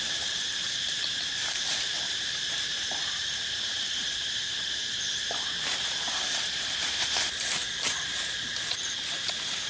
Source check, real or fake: fake